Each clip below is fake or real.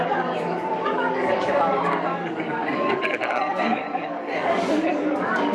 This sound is fake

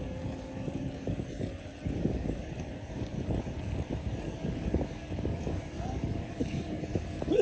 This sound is fake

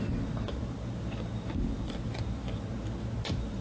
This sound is real